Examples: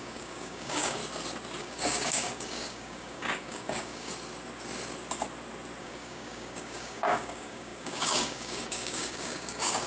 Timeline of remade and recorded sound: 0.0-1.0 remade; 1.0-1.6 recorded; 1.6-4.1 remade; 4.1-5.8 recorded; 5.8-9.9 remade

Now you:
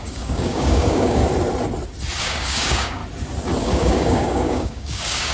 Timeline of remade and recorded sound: 0.0-1.2 remade; 1.2-2.2 recorded; 2.2-3.0 remade; 3.0-3.6 recorded; 3.6-5.3 remade

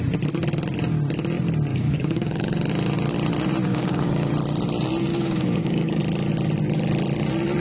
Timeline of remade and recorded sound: 0.0-1.7 recorded; 1.7-2.5 remade; 2.5-3.7 recorded; 3.7-4.3 remade; 4.3-5.1 recorded; 5.1-6.0 remade; 6.0-7.6 recorded

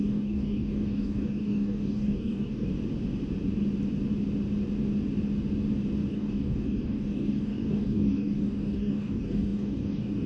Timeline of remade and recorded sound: 0.0-2.7 remade; 2.7-6.1 recorded; 6.1-10.3 remade

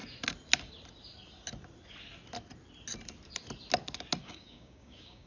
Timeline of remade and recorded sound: 0.0-4.2 recorded; 4.2-5.3 remade